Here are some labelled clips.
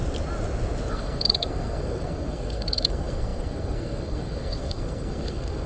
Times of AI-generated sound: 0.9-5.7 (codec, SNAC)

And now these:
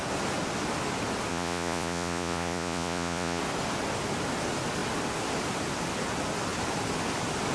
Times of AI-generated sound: 1.3-3.4 (vocoder, Vocos)

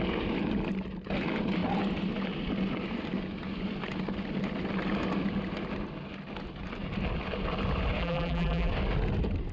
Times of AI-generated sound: 8.0-8.7 (vocoder, BigVGAN v2)

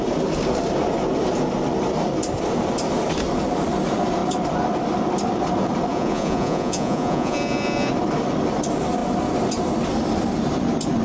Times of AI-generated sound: 5.9-7.9 (vocoder, Vocos)